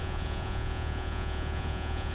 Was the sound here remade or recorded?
remade